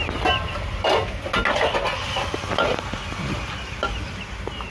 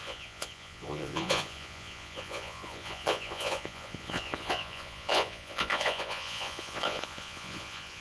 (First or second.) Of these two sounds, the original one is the first